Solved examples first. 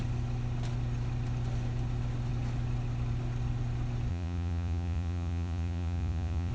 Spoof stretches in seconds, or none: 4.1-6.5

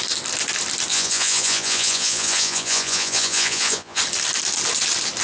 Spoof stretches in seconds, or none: 0.9-4.0

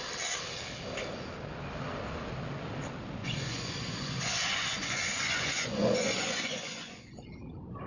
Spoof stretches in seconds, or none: 3.2-7.1

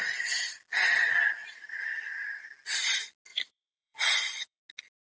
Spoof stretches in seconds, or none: 1.4-2.5; 3.3-4.6

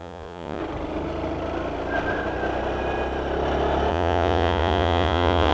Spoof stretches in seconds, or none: 0.0-0.6; 3.9-5.5

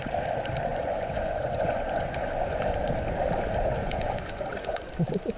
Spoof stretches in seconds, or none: 0.7-2.6; 3.8-4.9